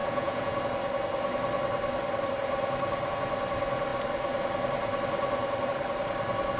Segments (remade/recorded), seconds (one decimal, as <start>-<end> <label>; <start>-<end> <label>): 0.0-0.6 remade; 0.6-6.6 recorded